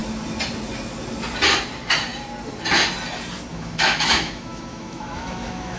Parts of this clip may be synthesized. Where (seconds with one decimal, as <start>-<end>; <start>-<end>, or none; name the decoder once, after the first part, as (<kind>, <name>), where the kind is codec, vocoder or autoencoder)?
3.5-5.8 (autoencoder, DAC-VAE)